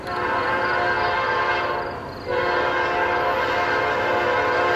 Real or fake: real